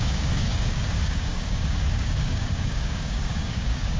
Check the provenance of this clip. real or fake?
fake